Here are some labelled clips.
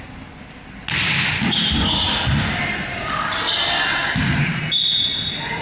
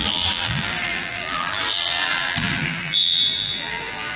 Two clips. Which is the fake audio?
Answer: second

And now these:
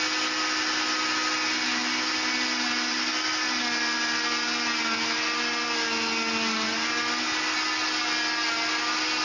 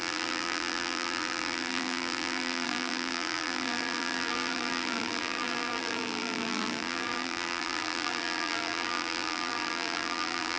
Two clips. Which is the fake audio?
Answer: second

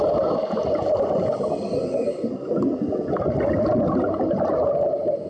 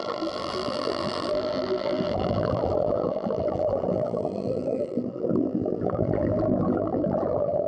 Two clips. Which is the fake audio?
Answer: second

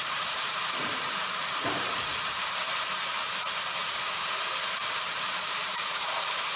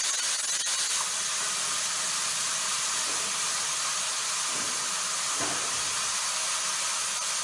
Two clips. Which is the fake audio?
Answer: first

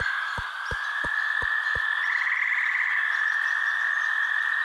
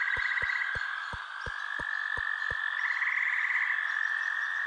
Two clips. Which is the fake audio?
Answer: first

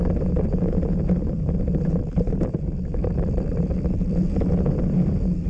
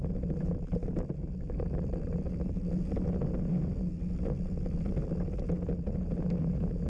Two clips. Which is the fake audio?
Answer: first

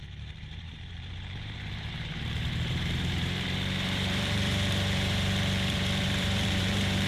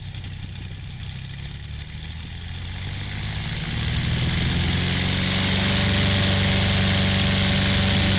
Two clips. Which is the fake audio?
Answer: first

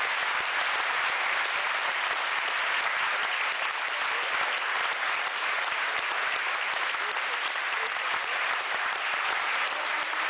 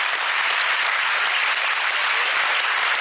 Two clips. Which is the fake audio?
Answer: second